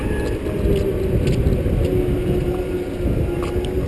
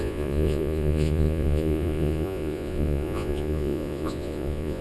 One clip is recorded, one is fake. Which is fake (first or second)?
second